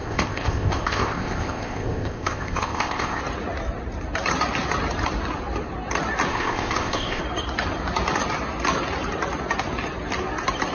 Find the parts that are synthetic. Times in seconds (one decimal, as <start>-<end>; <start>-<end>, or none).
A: 0.0-3.2; 6.3-7.2